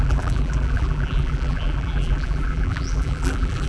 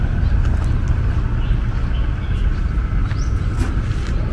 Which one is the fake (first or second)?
first